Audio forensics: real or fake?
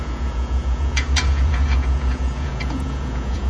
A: fake